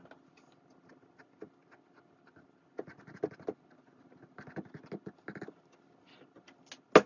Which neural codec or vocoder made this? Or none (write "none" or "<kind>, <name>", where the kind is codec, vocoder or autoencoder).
none